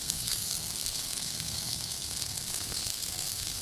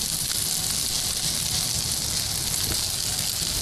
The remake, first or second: first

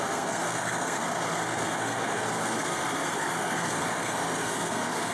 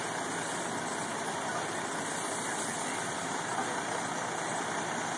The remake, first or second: first